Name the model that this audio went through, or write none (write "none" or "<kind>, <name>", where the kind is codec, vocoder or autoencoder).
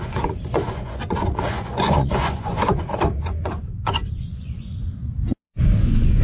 vocoder, Vocos